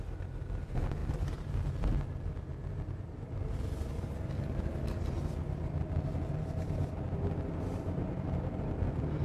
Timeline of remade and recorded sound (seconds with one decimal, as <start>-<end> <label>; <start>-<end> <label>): 0.0-9.2 recorded